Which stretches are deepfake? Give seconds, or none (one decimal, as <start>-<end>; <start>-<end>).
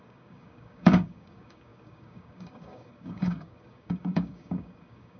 0.0-5.2